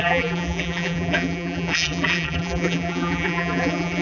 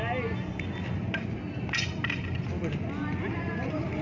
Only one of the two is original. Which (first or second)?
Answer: second